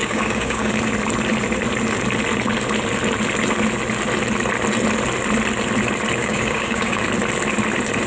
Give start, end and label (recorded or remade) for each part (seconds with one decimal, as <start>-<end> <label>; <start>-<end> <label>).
0.0-0.7 remade; 0.7-6.2 recorded; 6.2-7.0 remade; 7.0-8.1 recorded